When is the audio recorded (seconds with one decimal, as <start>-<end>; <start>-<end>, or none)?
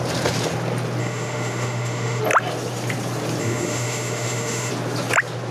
0.0-1.0; 2.2-3.4; 4.7-5.5